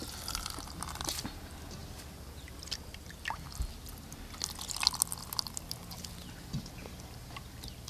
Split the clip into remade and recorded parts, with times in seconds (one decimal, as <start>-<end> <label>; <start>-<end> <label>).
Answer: 0.0-7.9 recorded